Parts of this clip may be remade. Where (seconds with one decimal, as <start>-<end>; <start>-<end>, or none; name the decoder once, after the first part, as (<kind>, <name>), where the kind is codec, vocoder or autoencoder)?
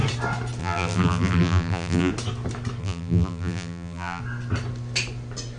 0.6-2.1 (vocoder, BigVGAN v2); 2.8-4.2